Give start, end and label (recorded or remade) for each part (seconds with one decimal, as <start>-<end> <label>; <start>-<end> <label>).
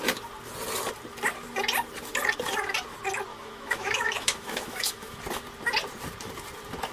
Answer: 0.0-3.3 recorded; 3.3-5.2 remade; 5.2-6.9 recorded